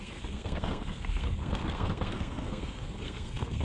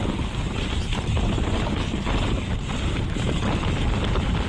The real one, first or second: second